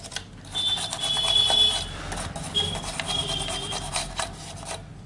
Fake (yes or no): yes